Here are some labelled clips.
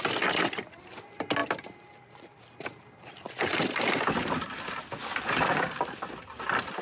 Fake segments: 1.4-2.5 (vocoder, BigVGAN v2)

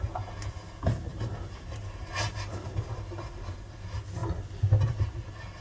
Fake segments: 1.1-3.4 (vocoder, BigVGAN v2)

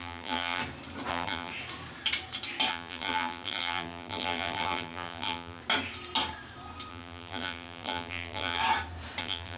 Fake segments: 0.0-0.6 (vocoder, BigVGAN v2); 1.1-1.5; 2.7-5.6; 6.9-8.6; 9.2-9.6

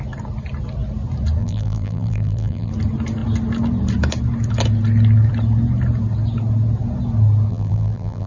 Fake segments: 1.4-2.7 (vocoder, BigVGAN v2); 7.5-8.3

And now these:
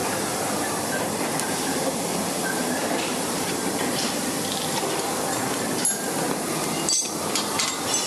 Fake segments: 0.0-4.3 (vocoder, BigVGAN v2)

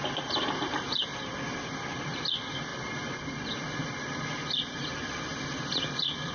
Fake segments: 0.0-1.0 (vocoder, BigVGAN v2); 1.6-6.3

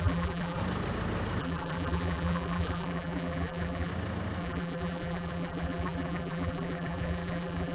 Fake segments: 0.0-0.6 (vocoder, BigVGAN v2); 1.4-3.9; 4.4-7.7